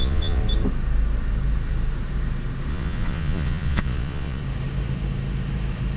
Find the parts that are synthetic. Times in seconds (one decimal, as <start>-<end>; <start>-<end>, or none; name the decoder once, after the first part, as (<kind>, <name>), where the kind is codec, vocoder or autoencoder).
0.0-0.4 (vocoder, Vocos); 2.7-4.4